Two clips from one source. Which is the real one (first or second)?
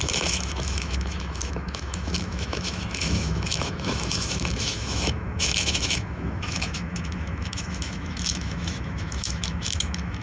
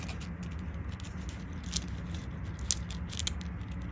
second